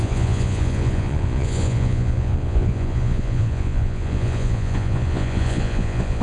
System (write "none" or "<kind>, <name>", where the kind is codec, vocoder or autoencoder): vocoder, Vocos